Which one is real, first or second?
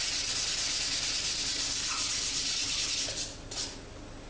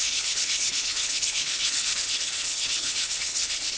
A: first